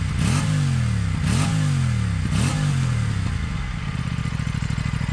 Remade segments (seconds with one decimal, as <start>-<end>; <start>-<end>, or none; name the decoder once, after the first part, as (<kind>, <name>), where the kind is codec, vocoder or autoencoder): none

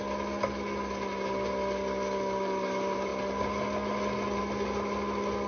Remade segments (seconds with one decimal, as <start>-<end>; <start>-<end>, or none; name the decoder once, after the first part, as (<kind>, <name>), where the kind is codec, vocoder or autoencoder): none